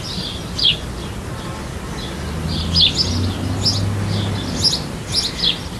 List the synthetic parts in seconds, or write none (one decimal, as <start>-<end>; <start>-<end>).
none